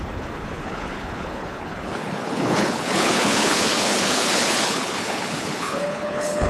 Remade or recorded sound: remade